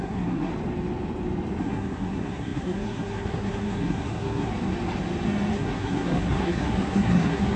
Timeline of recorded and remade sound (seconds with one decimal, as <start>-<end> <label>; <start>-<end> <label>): 0.0-0.5 remade; 0.5-1.6 recorded; 1.6-4.5 remade; 4.5-5.5 recorded; 5.5-7.6 remade